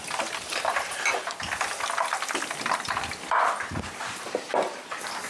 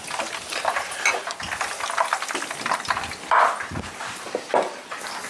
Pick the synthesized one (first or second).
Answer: first